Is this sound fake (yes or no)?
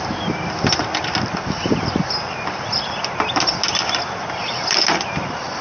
no